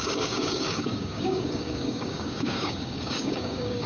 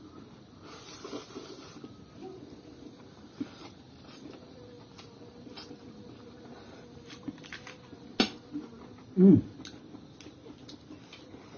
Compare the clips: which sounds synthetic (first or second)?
first